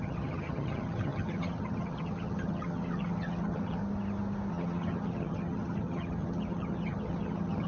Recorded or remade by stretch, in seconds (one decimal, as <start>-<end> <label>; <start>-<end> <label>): 0.0-3.8 remade; 3.8-4.5 recorded; 4.5-7.7 remade